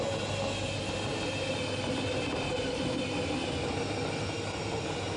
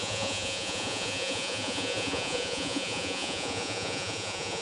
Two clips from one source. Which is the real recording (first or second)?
first